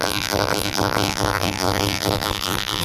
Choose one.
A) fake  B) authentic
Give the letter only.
A